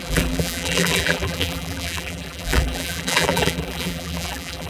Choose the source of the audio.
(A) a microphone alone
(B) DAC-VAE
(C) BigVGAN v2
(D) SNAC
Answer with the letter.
C